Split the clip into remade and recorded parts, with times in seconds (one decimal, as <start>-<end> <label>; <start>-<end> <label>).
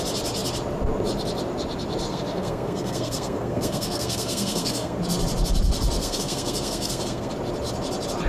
0.0-2.1 recorded; 2.1-5.0 remade; 5.0-6.0 recorded; 6.0-7.3 remade; 7.3-8.3 recorded